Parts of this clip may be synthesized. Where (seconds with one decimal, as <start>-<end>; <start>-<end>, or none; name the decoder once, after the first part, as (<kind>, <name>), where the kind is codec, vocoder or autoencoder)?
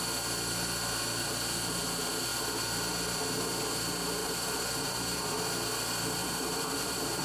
4.2-5.4 (vocoder, BigVGAN v2); 6.2-7.2